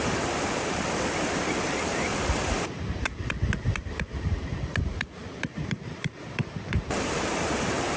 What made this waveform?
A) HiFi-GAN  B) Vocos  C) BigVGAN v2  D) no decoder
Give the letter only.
C